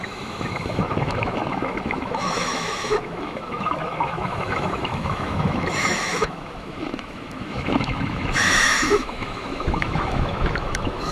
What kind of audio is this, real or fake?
fake